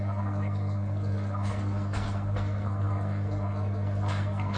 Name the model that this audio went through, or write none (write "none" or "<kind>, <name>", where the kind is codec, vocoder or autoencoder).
codec, SNAC